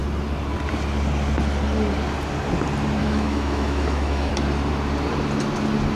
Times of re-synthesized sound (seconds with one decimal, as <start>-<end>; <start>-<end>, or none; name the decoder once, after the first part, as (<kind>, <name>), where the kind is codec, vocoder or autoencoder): 3.0-4.3 (autoencoder, DAC-VAE)